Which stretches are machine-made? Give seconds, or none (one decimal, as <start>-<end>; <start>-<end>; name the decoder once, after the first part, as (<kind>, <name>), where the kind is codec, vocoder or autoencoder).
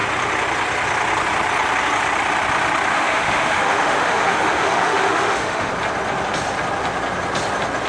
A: 2.9-5.7 (autoencoder, DAC-VAE)